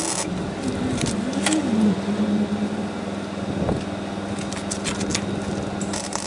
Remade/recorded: recorded